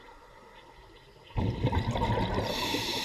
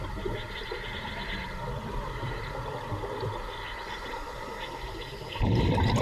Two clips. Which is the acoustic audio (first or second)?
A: first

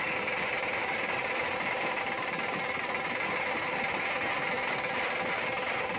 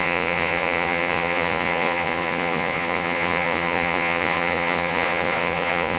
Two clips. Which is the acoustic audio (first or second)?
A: first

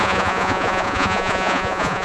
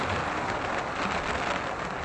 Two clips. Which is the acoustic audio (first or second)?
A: second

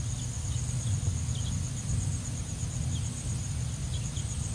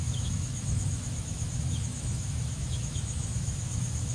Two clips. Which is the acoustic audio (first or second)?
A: first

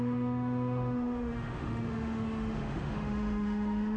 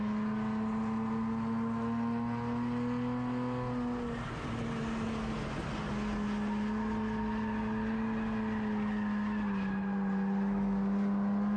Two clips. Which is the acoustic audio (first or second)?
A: second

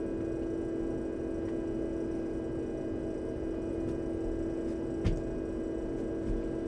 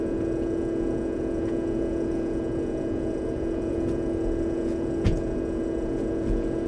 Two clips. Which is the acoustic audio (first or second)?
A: first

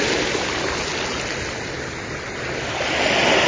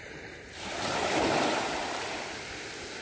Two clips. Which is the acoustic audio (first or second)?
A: first